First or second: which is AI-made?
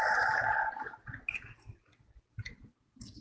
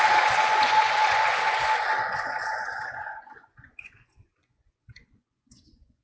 second